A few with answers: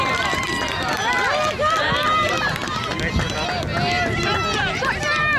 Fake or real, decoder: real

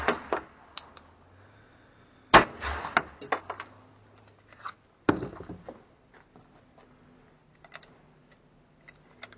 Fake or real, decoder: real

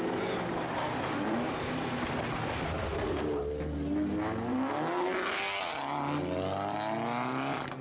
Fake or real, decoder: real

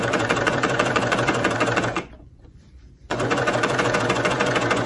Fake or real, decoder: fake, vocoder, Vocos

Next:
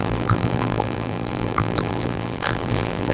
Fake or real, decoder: fake, vocoder, BigVGAN v2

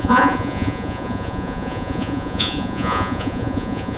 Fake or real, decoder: fake, vocoder, Vocos